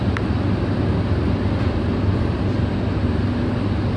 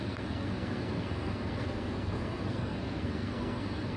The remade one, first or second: second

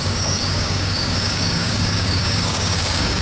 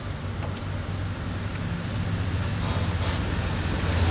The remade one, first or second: first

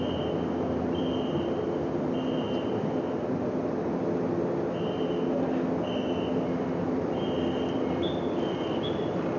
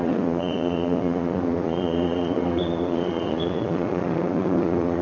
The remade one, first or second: second